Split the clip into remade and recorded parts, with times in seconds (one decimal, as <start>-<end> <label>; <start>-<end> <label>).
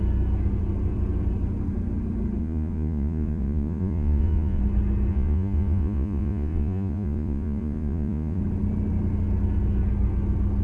0.0-2.4 recorded; 2.4-4.6 remade; 4.6-5.1 recorded; 5.1-8.4 remade; 8.4-10.6 recorded